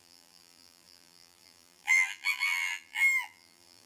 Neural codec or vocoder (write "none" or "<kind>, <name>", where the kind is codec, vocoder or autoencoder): vocoder, BigVGAN v2